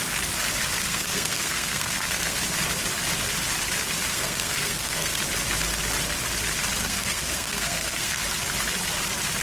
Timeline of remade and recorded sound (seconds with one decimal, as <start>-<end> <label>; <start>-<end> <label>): 0.0-0.8 recorded; 0.8-2.4 remade; 2.4-4.1 recorded; 4.1-5.2 remade; 5.2-6.8 recorded; 6.8-8.2 remade; 8.2-9.4 recorded